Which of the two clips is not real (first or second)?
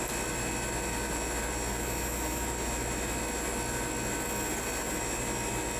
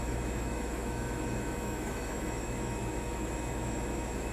second